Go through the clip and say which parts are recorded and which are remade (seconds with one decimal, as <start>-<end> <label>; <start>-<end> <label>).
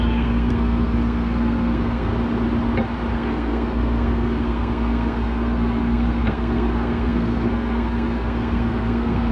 0.0-2.1 remade; 2.1-3.1 recorded; 3.1-9.3 remade